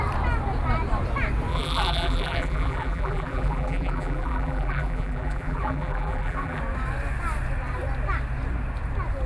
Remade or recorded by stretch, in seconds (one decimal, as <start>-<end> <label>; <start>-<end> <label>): 0.0-1.5 recorded; 1.5-6.6 remade; 6.6-9.3 recorded